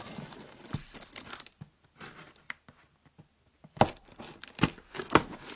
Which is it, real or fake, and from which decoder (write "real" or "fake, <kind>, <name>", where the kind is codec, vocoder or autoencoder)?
real